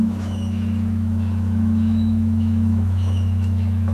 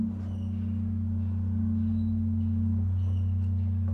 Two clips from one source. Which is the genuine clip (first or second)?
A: second